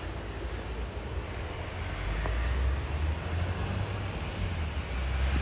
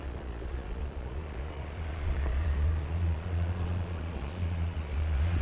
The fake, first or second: second